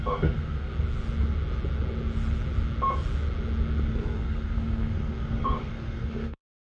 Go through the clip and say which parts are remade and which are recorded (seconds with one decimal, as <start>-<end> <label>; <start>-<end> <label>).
0.0-0.7 remade; 0.7-3.9 recorded; 3.9-6.7 remade